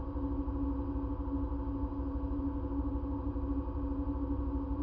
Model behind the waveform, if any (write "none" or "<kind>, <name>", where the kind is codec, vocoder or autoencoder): none